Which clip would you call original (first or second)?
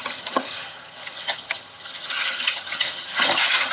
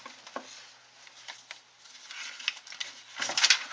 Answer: second